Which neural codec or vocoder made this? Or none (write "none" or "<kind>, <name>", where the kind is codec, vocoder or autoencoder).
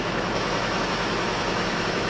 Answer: autoencoder, DAC-VAE